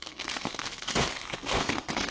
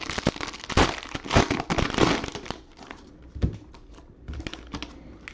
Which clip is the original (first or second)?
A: second